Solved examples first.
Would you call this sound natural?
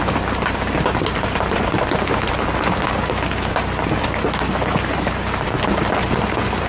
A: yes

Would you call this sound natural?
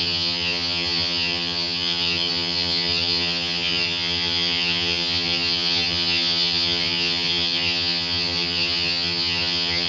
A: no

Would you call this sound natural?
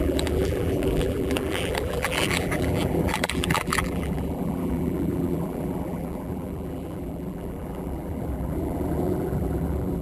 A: no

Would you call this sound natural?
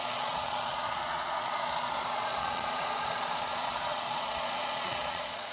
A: no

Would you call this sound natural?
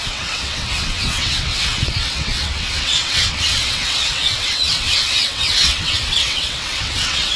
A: no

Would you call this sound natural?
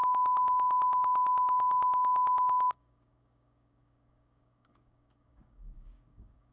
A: no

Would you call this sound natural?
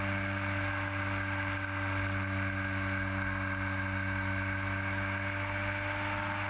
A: yes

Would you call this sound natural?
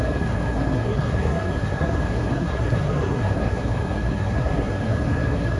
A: no